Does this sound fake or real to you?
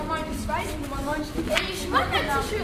real